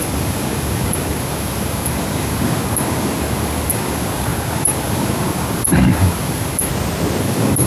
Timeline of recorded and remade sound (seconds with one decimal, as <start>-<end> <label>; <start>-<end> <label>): 0.0-6.7 remade; 6.7-7.2 recorded; 7.2-7.7 remade